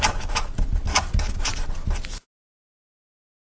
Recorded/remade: recorded